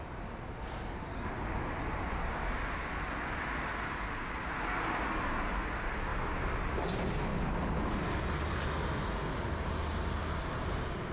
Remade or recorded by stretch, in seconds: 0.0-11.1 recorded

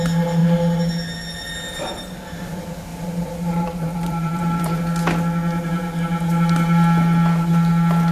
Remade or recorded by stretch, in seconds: 0.0-2.9 recorded; 2.9-4.8 remade; 4.8-8.1 recorded

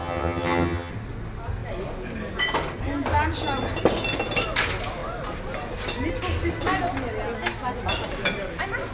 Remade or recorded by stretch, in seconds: 0.0-0.9 remade; 0.9-8.9 recorded

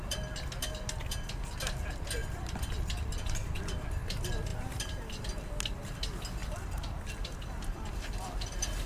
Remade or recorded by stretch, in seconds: 0.0-6.4 recorded; 6.4-8.9 remade

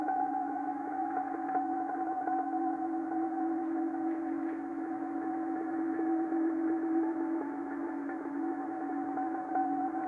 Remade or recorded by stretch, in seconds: 0.0-10.1 remade

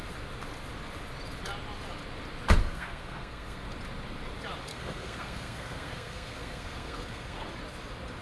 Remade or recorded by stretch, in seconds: 0.0-2.6 recorded; 2.6-3.7 remade; 3.7-4.7 recorded; 4.7-7.5 remade; 7.5-8.2 recorded

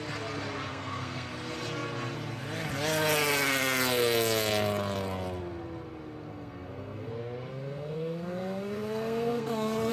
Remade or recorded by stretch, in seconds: 0.0-0.7 recorded; 0.7-1.3 remade; 1.3-6.3 recorded; 6.3-7.1 remade; 7.1-7.5 recorded; 7.5-9.9 remade

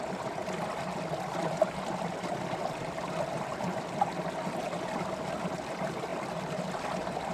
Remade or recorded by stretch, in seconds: 0.0-7.3 recorded